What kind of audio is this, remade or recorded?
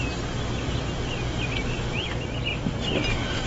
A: recorded